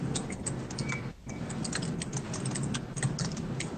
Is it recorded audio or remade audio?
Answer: recorded